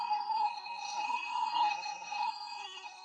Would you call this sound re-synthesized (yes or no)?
yes